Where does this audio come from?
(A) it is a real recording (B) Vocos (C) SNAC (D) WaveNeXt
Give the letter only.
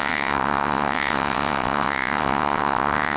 D